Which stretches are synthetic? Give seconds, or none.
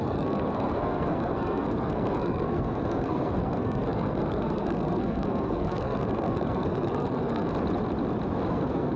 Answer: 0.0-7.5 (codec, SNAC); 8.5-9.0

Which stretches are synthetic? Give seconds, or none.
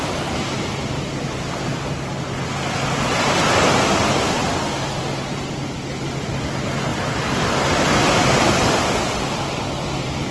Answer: 6.9-8.1 (vocoder, BigVGAN v2)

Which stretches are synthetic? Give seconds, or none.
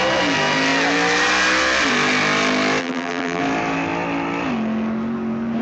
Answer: 2.8-3.4 (vocoder, BigVGAN v2)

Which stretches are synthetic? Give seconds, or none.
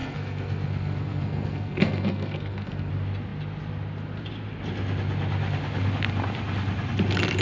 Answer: 0.0-2.9 (codec, SNAC)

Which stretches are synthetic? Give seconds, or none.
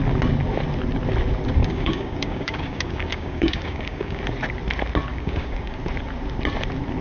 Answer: 1.6-4.2 (codec, DAC); 5.1-5.8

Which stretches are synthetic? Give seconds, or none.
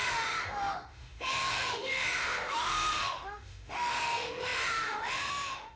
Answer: 0.0-5.8 (autoencoder, DAC-VAE)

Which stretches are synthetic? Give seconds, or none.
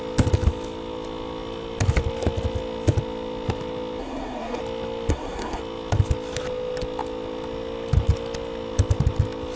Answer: 4.0-4.6 (codec, SNAC); 5.1-5.6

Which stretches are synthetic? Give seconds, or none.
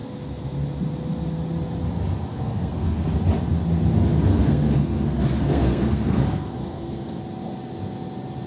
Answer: 2.3-3.1 (codec, SNAC); 4.3-7.2